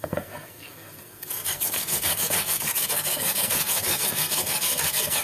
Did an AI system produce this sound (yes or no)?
yes